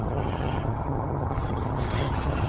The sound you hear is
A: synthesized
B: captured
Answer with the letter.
A